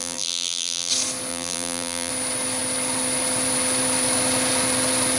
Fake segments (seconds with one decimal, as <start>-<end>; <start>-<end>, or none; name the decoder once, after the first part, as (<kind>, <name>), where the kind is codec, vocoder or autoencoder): 0.0-0.9 (vocoder, BigVGAN v2); 1.3-2.1